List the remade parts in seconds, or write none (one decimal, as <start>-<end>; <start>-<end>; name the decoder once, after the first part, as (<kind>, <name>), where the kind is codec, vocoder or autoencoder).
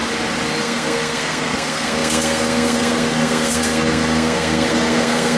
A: 0.6-5.4 (codec, SNAC)